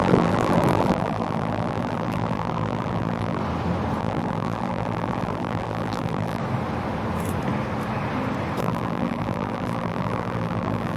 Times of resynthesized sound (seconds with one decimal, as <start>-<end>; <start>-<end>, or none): 0.0-3.4; 4.0-6.4; 8.6-11.0